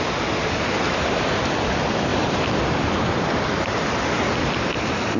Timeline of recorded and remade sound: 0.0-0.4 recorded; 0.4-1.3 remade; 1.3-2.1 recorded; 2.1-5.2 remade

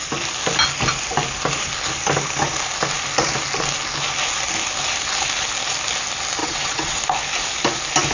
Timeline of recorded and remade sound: 0.0-6.4 recorded; 6.4-7.0 remade; 7.0-8.1 recorded